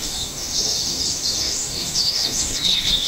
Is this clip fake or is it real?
fake